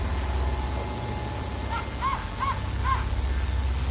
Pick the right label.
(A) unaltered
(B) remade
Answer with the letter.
A